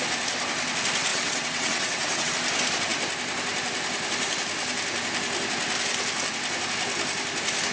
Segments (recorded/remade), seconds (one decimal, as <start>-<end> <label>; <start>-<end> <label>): 0.0-1.1 recorded; 1.1-2.3 remade; 2.3-7.7 recorded